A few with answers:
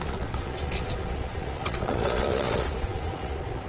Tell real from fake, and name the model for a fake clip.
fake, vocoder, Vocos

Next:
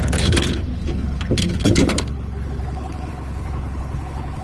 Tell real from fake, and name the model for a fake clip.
fake, codec, HILCodec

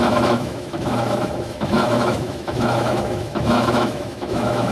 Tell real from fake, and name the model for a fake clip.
fake, autoencoder, DAC-VAE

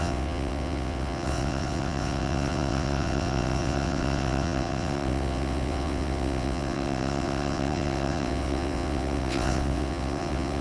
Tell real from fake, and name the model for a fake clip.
fake, vocoder, WaveNeXt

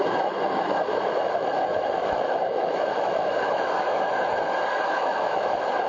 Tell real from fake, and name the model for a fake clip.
fake, autoencoder, DAC-VAE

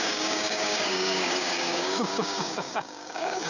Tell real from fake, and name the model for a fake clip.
fake, codec, DAC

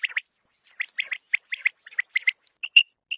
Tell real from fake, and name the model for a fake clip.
real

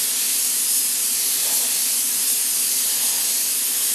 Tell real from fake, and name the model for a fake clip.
real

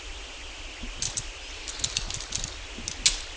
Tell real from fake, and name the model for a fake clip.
real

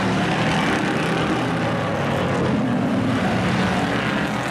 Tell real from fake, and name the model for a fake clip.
real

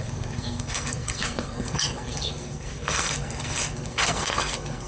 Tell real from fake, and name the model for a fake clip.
fake, codec, SNAC